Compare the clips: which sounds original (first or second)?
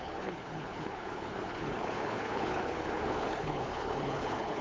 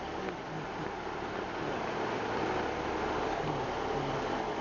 second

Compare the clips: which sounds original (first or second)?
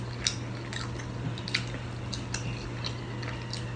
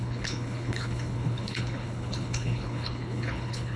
first